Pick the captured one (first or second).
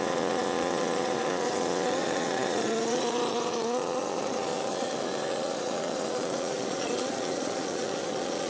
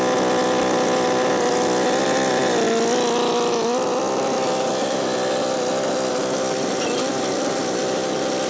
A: second